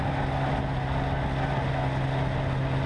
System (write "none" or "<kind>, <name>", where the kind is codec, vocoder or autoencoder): none